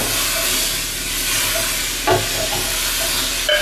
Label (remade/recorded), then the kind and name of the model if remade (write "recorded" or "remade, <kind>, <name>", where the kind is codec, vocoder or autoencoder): recorded